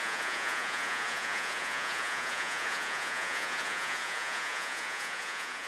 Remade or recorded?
remade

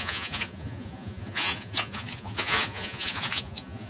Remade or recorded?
remade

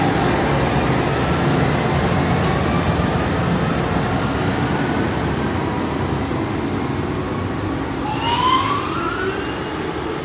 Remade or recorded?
recorded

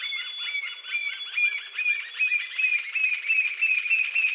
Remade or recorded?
recorded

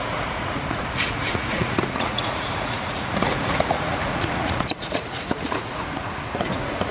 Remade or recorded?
remade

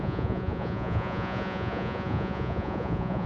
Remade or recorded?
remade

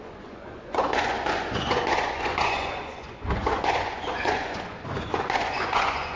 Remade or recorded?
remade